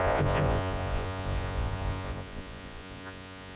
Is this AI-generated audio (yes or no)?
yes